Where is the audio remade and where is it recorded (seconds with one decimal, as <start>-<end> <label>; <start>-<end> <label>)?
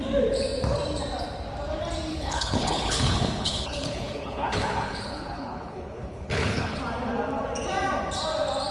0.0-2.1 recorded; 2.1-6.8 remade; 6.8-8.7 recorded